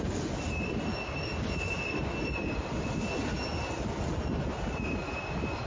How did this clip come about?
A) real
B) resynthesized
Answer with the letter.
A